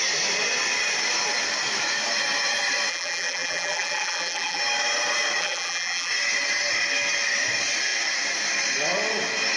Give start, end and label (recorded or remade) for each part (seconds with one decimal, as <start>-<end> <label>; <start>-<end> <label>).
0.0-2.9 recorded; 2.9-4.6 remade; 4.6-5.4 recorded; 5.4-6.1 remade; 6.1-9.6 recorded